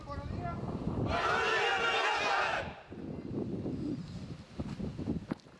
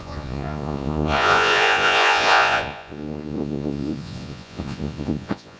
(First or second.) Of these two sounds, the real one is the first